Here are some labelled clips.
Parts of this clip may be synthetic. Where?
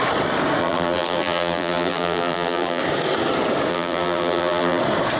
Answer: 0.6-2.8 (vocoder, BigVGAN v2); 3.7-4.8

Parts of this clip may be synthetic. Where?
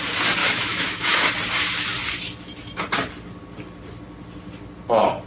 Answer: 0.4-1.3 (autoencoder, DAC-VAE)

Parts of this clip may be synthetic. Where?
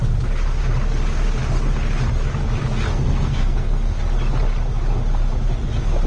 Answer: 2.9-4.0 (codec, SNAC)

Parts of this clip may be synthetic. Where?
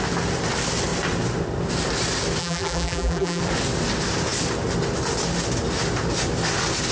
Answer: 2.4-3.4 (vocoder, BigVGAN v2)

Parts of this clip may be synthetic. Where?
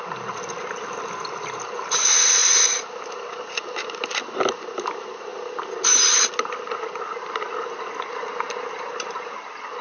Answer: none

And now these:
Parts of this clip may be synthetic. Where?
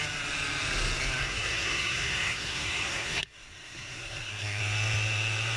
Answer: 1.2-4.6 (codec, SNAC)